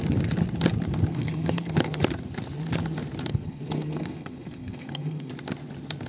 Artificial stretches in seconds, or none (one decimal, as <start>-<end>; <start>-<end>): 1.1-2.0; 3.3-5.3